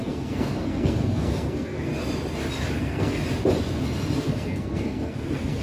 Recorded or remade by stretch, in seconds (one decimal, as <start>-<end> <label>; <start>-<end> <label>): 0.0-1.9 remade; 1.9-2.8 recorded; 2.8-3.2 remade; 3.2-4.2 recorded; 4.2-5.6 remade